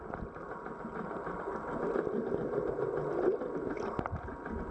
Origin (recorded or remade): recorded